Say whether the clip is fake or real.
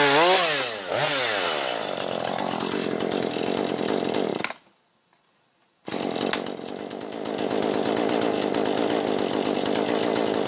real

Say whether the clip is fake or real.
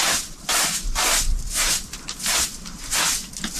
real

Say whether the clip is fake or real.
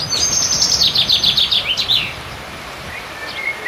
real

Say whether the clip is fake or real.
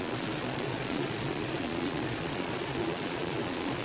fake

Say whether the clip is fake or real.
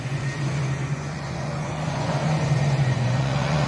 fake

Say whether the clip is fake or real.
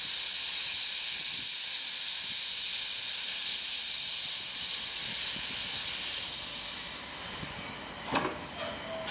real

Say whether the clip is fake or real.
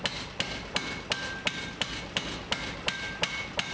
real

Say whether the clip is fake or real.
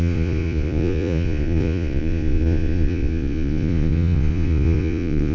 fake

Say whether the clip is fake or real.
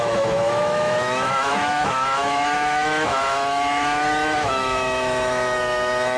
fake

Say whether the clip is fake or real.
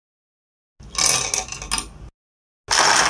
real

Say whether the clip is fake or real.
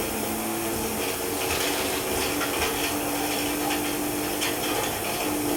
real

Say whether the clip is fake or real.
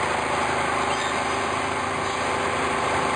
real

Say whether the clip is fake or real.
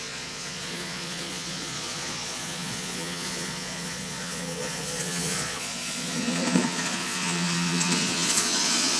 fake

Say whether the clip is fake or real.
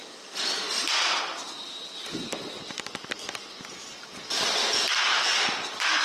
real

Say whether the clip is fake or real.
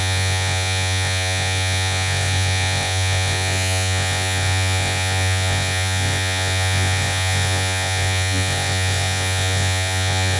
fake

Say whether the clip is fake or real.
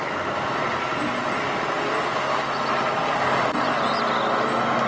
real